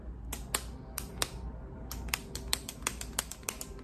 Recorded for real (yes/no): yes